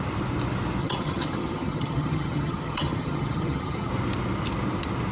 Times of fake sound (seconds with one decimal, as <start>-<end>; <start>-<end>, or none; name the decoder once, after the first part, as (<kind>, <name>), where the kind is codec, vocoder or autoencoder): 0.8-3.9 (vocoder, HiFi-GAN)

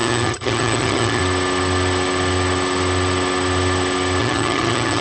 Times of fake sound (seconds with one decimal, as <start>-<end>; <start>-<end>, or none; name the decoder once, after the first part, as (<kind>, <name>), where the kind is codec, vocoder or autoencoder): 0.0-1.2 (vocoder, HiFi-GAN); 4.2-5.0

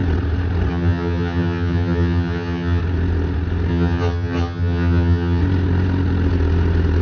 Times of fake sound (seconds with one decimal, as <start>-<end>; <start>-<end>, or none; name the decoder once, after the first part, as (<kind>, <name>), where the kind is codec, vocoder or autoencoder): 0.7-2.8 (vocoder, HiFi-GAN); 3.7-5.4

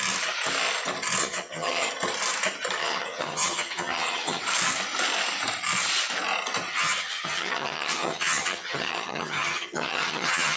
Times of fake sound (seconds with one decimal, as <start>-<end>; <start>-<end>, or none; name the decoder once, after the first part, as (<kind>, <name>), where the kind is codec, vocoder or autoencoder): 1.2-1.9 (vocoder, HiFi-GAN); 2.8-4.4; 6.7-10.6